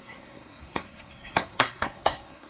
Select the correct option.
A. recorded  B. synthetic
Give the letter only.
B